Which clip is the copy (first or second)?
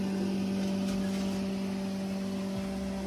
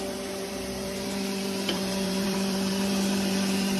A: second